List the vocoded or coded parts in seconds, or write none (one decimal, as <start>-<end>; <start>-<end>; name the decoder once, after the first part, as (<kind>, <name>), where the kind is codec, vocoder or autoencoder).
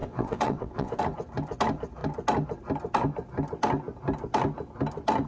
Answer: 0.0-1.0 (vocoder, WaveNeXt)